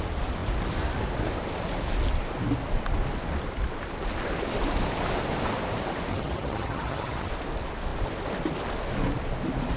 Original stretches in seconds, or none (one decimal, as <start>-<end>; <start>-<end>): 0.0-6.1; 7.3-9.8